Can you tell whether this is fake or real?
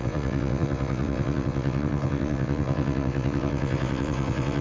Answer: fake